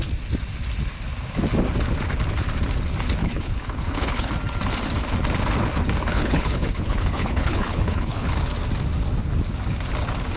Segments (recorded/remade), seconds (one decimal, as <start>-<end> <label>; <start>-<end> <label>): 0.0-3.2 recorded; 3.2-4.3 remade; 4.3-6.1 recorded; 6.1-8.3 remade; 8.3-10.4 recorded